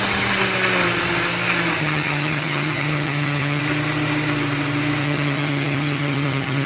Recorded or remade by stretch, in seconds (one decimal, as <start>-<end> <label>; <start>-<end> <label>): 0.0-1.8 recorded; 1.8-3.6 remade; 3.6-5.0 recorded; 5.0-6.7 remade

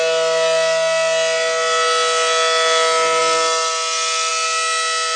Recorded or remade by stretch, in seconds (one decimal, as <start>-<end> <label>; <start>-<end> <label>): 0.0-5.2 recorded

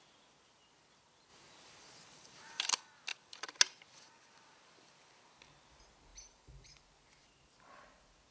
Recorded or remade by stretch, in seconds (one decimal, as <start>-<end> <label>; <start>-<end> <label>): 0.0-1.3 recorded; 1.3-2.6 remade; 2.6-6.1 recorded; 6.1-6.8 remade; 6.8-8.3 recorded